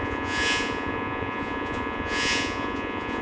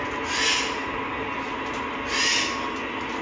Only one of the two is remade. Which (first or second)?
first